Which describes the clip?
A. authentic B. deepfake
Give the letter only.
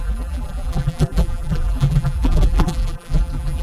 B